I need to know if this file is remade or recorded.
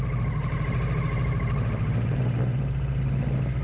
recorded